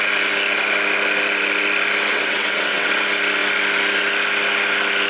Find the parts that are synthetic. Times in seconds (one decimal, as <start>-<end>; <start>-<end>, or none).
2.1-2.9